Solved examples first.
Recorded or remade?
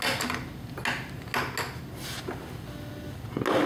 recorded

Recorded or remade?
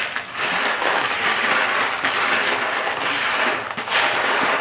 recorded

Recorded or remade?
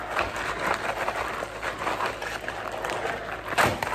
recorded